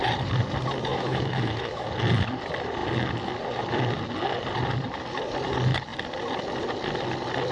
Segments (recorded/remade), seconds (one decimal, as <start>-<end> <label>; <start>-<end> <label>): 0.0-0.9 recorded; 0.9-1.9 remade; 1.9-7.5 recorded